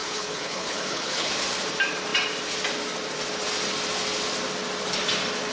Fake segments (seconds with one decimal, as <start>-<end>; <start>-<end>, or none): 0.0-1.3